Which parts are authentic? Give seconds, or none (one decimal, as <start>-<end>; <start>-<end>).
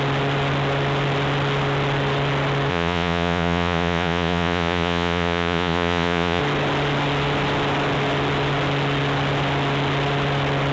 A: 0.0-2.7; 6.4-10.7